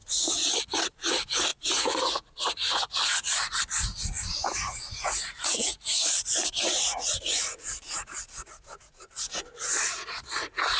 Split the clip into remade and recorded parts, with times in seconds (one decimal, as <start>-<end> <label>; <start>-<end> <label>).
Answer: 0.0-0.6 recorded; 0.6-10.8 remade